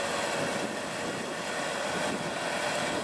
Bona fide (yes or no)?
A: yes